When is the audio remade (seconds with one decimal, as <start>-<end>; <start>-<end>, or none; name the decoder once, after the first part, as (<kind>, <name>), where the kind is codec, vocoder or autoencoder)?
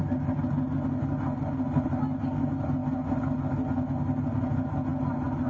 none